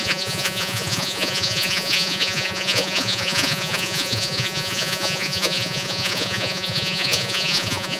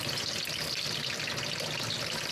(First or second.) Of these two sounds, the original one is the second